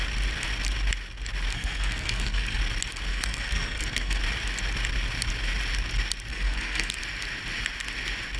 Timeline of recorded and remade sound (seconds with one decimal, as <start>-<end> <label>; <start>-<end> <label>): 0.0-1.5 recorded; 1.5-2.6 remade; 2.6-3.1 recorded; 3.1-4.2 remade; 4.2-6.3 recorded; 6.3-7.0 remade; 7.0-8.4 recorded